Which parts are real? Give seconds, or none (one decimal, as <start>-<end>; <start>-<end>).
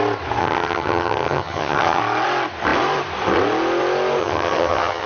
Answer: 0.0-0.4; 2.0-4.2